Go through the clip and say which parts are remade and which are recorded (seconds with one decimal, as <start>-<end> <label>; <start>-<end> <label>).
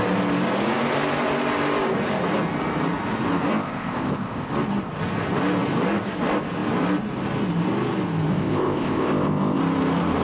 0.0-3.5 recorded; 3.5-4.5 remade; 4.5-8.3 recorded; 8.3-9.6 remade; 9.6-10.2 recorded